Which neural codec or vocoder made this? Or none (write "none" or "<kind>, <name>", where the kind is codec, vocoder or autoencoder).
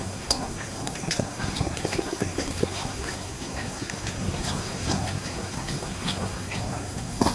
codec, SNAC